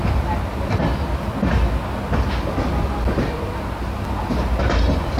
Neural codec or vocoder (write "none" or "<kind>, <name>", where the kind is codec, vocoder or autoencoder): none